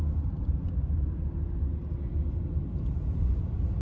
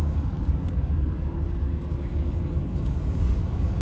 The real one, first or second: first